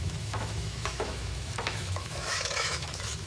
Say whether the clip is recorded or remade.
remade